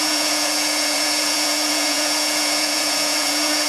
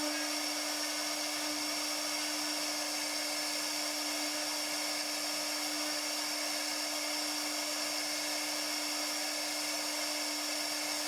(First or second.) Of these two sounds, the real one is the second